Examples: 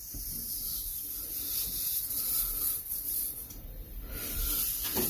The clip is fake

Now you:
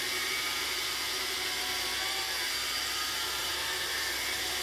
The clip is fake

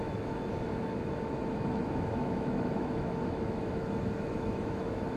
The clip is fake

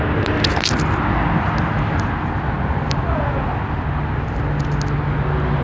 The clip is real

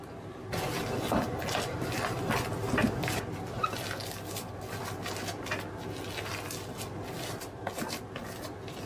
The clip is real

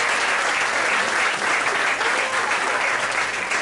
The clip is real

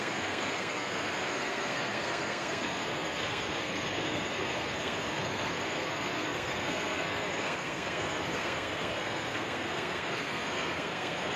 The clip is fake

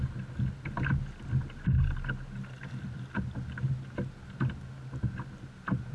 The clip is real